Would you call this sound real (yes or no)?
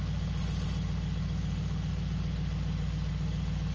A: yes